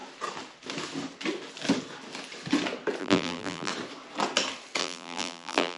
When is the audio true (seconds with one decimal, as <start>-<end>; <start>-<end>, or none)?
0.0-3.0; 3.7-4.8